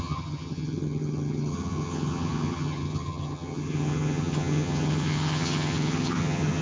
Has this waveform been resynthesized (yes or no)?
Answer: yes